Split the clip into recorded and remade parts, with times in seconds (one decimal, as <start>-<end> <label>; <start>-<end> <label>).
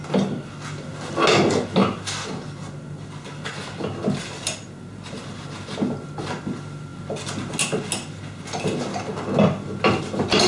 0.0-10.5 recorded